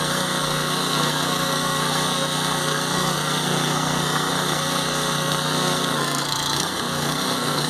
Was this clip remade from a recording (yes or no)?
yes